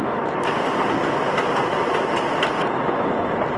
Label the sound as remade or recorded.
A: recorded